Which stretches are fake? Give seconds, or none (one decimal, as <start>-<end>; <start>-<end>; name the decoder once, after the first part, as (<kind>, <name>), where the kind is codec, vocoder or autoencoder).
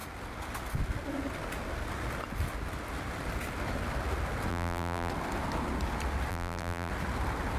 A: 4.5-5.1 (vocoder, BigVGAN v2); 6.3-6.9